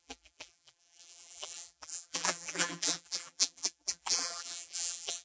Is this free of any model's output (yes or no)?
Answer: no